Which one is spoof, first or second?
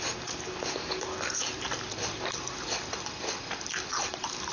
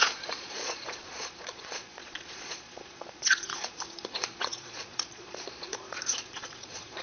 second